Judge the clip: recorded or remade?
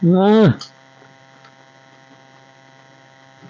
recorded